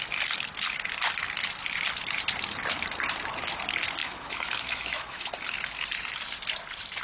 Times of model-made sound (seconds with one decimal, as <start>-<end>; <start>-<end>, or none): 4.0-5.3